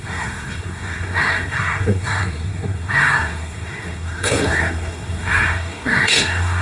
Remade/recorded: remade